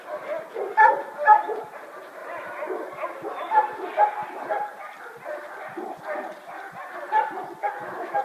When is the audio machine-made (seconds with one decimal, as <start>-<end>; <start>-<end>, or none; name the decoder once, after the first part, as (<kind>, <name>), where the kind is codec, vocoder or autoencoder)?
7.6-8.2 (autoencoder, DAC-VAE)